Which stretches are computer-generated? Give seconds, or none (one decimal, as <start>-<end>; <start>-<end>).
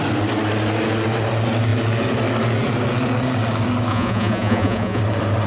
3.9-5.0